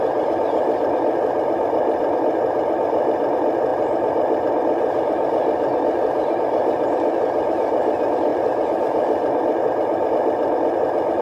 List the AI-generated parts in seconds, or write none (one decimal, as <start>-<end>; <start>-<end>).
0.0-11.2